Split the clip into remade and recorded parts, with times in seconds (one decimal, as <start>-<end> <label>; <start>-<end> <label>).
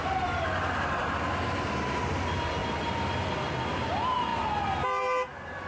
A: 0.0-5.7 recorded